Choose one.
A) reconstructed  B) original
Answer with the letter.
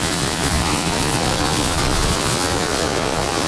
A